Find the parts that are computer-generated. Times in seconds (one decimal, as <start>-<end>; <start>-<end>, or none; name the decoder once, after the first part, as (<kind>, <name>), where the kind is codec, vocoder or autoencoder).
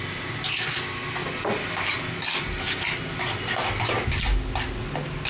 none